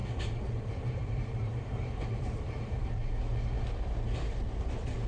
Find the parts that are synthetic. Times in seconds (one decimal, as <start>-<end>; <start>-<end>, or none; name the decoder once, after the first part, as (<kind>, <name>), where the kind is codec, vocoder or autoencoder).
0.0-3.1 (vocoder, BigVGAN v2)